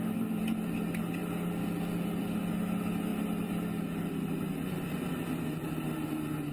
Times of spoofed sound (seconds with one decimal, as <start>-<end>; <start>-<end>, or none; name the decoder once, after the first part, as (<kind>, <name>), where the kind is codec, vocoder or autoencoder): none